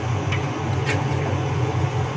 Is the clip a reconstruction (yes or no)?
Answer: yes